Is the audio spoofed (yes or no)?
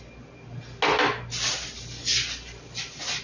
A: no